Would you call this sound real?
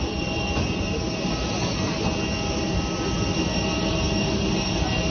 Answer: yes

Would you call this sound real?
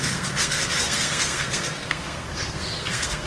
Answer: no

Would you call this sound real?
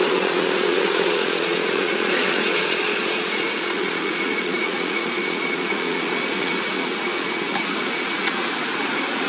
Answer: no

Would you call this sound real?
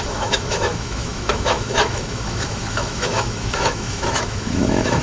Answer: no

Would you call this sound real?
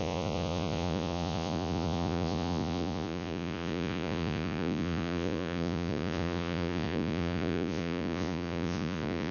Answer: no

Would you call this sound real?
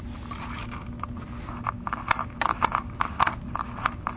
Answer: yes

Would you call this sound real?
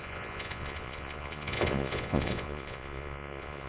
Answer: no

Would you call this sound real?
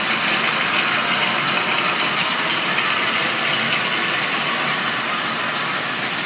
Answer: yes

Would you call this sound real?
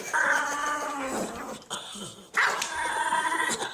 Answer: yes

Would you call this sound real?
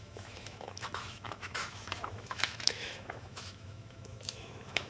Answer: no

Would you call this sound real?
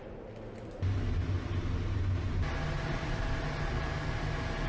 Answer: yes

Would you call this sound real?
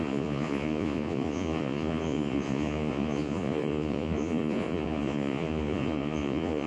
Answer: no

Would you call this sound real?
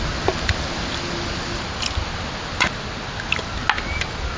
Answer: yes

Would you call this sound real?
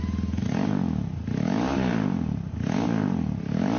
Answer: yes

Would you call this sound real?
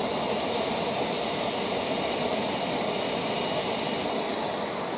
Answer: yes